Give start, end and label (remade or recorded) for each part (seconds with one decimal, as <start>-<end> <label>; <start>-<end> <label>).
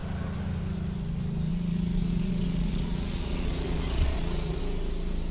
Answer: 0.0-1.5 recorded; 1.5-4.6 remade; 4.6-5.3 recorded